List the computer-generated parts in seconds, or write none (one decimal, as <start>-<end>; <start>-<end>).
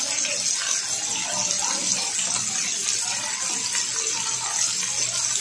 none